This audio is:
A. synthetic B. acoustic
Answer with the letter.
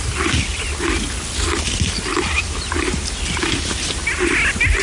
B